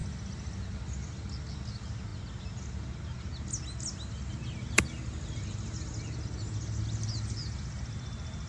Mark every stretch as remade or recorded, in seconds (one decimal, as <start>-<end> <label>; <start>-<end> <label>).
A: 0.0-8.5 recorded